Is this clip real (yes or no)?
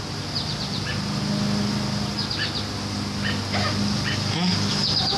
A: yes